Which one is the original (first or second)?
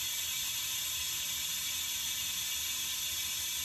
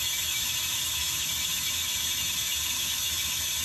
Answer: first